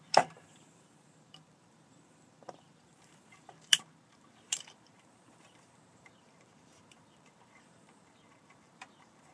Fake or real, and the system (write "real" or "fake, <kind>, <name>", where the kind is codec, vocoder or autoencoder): fake, vocoder, BigVGAN v2